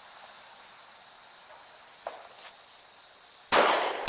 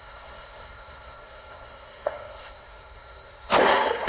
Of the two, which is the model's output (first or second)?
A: second